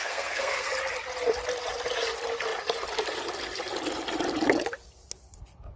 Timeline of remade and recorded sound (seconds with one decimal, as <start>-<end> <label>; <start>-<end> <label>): 0.0-0.7 remade; 0.7-5.8 recorded